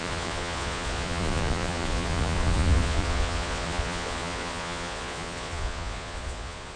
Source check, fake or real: fake